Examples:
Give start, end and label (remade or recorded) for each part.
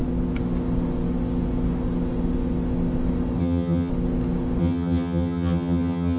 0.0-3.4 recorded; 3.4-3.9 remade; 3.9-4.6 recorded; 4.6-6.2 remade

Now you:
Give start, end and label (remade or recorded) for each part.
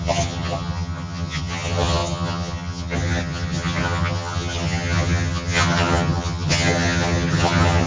0.0-7.9 remade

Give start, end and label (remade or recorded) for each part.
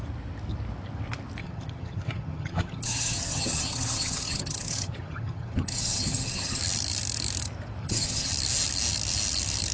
0.0-1.4 recorded; 1.4-6.6 remade; 6.6-7.8 recorded; 7.8-8.3 remade; 8.3-9.7 recorded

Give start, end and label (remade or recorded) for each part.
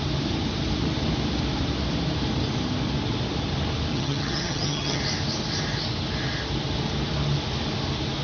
0.0-3.9 recorded; 3.9-5.0 remade; 5.0-8.2 recorded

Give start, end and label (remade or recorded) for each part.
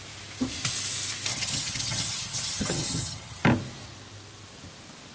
0.0-1.3 recorded; 1.3-3.4 remade; 3.4-5.1 recorded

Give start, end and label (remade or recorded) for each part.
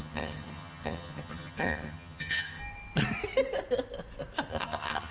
0.0-2.6 remade; 2.6-4.5 recorded; 4.5-5.1 remade